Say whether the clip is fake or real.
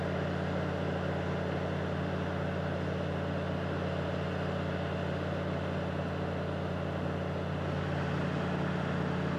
real